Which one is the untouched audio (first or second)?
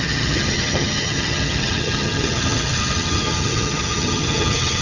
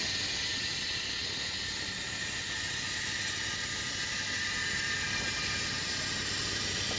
second